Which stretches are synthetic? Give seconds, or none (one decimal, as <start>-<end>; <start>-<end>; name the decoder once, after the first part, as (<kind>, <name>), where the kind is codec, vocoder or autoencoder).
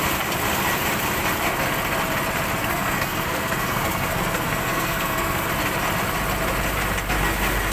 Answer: 2.6-5.5 (codec, SNAC)